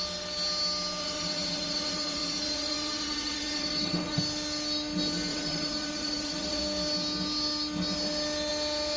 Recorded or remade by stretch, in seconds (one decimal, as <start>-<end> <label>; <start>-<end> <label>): 0.0-1.0 recorded; 1.0-4.2 remade; 4.2-5.3 recorded; 5.3-6.6 remade; 6.6-9.0 recorded